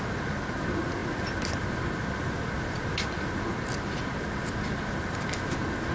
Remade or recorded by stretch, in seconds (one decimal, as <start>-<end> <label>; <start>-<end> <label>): 0.0-5.9 recorded